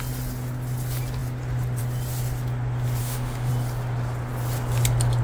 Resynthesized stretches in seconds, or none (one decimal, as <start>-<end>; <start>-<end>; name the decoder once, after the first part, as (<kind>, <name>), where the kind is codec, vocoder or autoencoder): 3.0-3.5 (autoencoder, DAC-VAE)